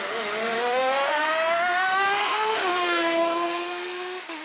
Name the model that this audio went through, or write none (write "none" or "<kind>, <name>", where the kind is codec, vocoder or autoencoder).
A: autoencoder, DAC-VAE